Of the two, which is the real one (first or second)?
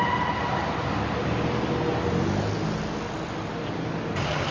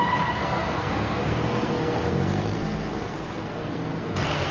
first